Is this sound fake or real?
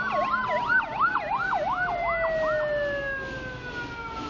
real